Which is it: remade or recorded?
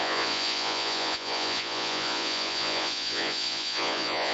remade